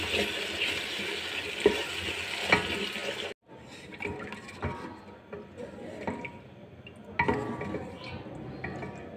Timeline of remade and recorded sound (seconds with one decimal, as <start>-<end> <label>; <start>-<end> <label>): 0.0-9.2 recorded